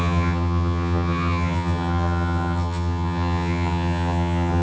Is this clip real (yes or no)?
no